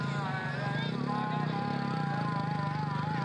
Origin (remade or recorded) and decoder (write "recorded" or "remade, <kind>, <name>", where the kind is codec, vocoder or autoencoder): recorded